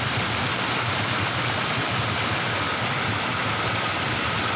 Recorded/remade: recorded